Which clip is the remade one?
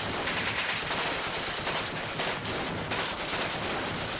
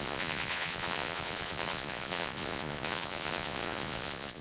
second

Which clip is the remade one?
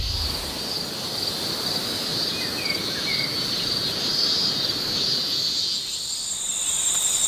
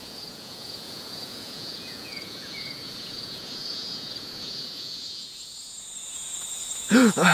second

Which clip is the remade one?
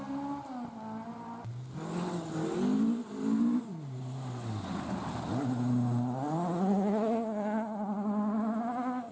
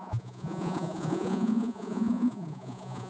second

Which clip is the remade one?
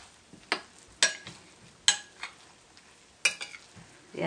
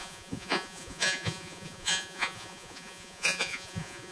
second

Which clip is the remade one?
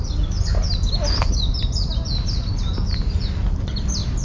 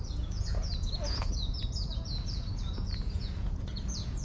second